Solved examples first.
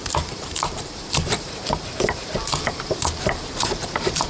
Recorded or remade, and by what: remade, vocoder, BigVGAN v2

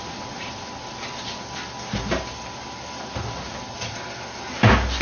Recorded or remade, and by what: recorded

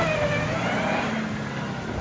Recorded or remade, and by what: recorded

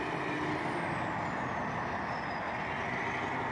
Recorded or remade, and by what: recorded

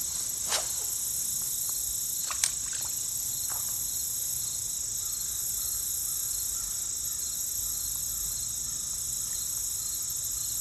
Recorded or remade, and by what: recorded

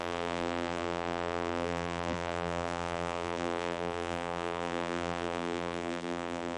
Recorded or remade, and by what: remade, vocoder, BigVGAN v2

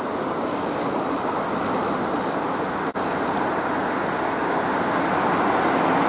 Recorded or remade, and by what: recorded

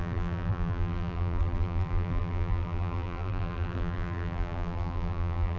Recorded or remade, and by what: remade, vocoder, BigVGAN v2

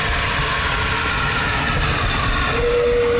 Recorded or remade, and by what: recorded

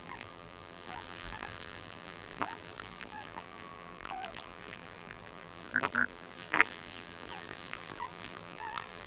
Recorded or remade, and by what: remade, vocoder, BigVGAN v2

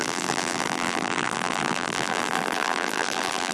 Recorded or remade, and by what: remade, vocoder, BigVGAN v2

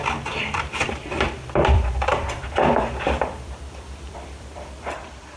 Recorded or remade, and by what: remade, vocoder, BigVGAN v2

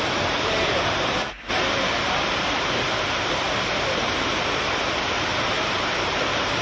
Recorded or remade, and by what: remade, vocoder, BigVGAN v2